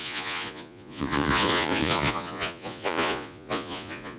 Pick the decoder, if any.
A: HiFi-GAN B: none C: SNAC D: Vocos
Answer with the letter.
D